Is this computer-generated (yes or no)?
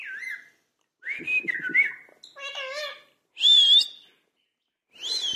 no